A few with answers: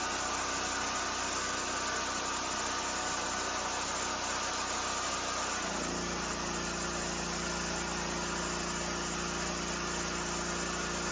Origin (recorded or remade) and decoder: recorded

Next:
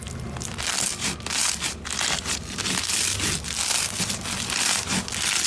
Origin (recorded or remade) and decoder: recorded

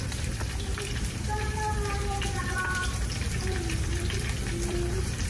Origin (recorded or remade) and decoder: remade, vocoder, BigVGAN v2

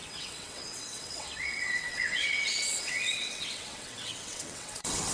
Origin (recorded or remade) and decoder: remade, vocoder, WaveNeXt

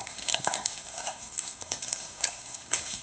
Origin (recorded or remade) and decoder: remade, codec, SNAC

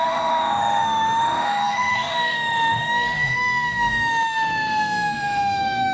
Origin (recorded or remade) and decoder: remade, autoencoder, DAC-VAE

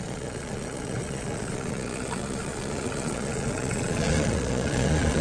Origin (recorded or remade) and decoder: remade, vocoder, Vocos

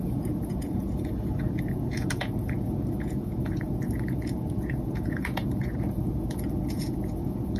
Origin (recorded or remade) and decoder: remade, vocoder, Vocos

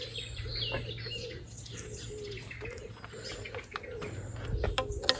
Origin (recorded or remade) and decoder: recorded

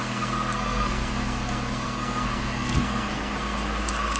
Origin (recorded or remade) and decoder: remade, codec, SNAC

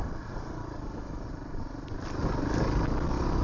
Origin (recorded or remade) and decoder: remade, vocoder, BigVGAN v2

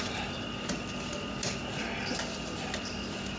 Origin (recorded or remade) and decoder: recorded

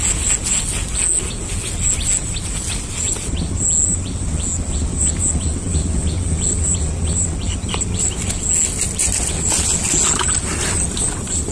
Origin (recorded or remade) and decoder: recorded